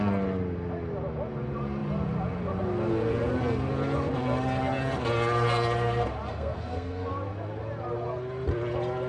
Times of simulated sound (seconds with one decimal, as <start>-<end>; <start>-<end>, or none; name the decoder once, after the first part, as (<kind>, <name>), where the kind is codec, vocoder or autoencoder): 6.3-7.1 (codec, SNAC)